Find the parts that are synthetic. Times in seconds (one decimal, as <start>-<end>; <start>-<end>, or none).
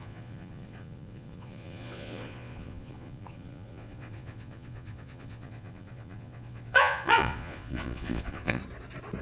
0.0-8.6